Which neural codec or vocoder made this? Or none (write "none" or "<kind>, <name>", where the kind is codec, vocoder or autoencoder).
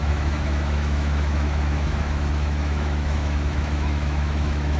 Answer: autoencoder, DAC-VAE